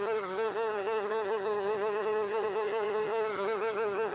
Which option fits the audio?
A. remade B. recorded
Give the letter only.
A